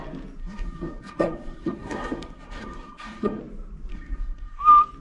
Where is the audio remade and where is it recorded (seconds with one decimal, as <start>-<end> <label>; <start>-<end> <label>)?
0.0-0.4 recorded; 0.4-3.4 remade; 3.4-3.9 recorded; 3.9-4.6 remade; 4.6-5.0 recorded